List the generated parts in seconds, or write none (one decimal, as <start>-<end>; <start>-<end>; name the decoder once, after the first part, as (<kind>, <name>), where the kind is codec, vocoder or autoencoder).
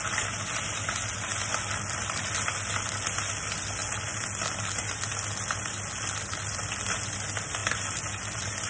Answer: none